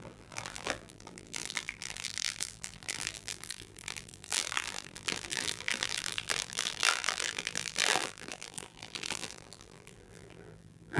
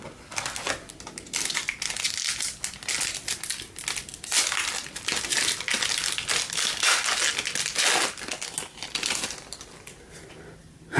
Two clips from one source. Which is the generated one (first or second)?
first